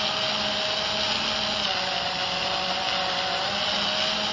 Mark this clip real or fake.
real